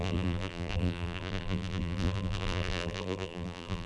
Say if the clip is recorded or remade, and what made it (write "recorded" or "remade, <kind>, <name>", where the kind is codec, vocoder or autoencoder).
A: remade, vocoder, BigVGAN v2